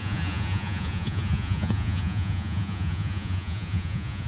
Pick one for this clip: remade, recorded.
remade